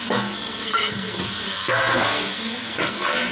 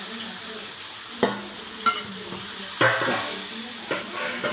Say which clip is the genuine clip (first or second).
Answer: second